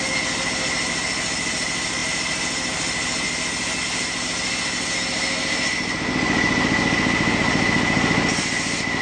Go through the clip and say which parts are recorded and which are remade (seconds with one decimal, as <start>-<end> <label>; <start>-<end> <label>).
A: 0.0-9.0 recorded